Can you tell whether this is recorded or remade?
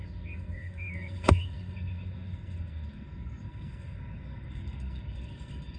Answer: remade